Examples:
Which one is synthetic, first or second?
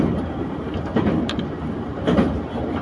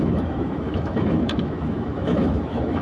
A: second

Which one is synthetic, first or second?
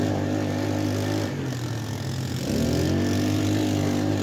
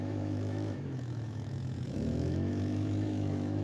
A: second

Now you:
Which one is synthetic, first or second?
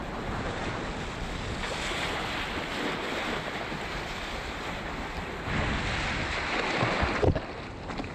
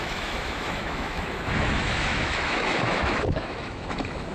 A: second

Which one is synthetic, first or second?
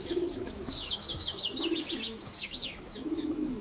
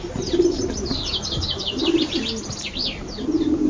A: first